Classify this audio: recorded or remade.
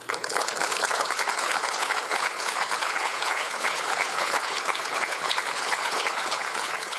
remade